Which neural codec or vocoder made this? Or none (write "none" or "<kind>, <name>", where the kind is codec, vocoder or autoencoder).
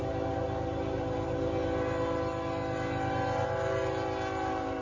none